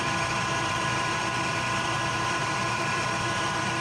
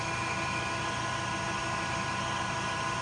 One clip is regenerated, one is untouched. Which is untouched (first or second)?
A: second